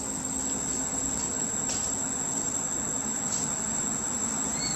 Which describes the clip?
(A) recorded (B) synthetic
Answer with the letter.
A